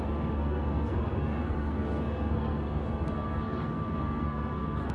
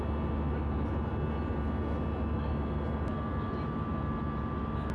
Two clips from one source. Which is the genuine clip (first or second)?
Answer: second